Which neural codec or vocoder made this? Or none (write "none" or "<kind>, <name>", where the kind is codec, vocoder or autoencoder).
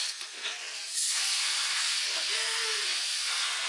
codec, SNAC